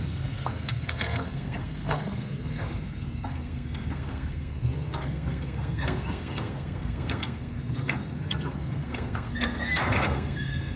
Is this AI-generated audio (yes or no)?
yes